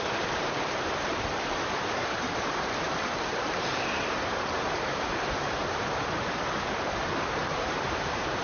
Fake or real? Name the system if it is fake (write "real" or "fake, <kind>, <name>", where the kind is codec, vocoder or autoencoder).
fake, vocoder, BigVGAN v2